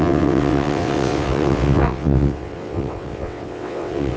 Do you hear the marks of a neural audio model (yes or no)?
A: yes